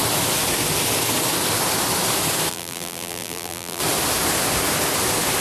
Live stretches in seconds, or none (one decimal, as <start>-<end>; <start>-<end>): 0.0-2.5; 3.8-5.4